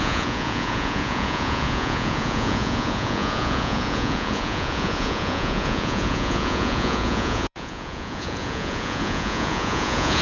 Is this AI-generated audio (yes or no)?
yes